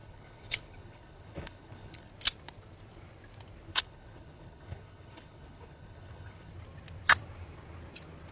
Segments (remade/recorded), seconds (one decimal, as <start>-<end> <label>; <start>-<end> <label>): 0.0-2.1 remade; 2.1-3.7 recorded; 3.7-6.5 remade; 6.5-8.3 recorded